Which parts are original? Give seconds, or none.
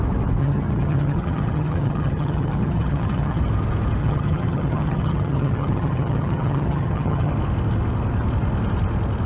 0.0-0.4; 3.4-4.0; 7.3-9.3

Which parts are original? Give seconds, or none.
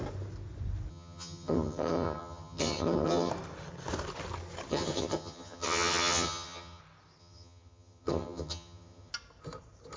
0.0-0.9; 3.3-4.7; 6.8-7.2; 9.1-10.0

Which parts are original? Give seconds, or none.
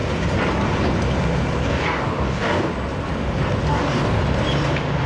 0.0-1.6; 2.7-3.7; 4.2-5.1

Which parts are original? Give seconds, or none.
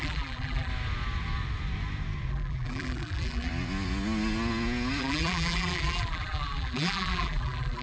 0.7-2.3; 3.5-5.0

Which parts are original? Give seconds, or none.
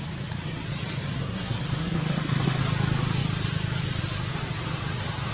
0.0-1.2; 2.6-5.3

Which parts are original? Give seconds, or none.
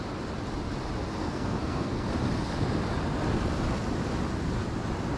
0.0-1.2; 2.1-5.2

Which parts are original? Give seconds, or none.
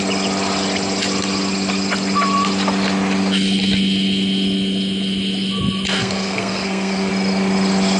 0.0-6.0; 7.1-8.0